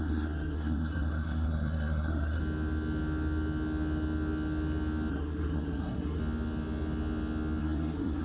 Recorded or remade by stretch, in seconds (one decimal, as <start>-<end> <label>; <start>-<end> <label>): 0.0-2.4 remade; 2.4-5.1 recorded; 5.1-6.2 remade; 6.2-7.6 recorded; 7.6-8.2 remade